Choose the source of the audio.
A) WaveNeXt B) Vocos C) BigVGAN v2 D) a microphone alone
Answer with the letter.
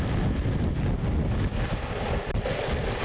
D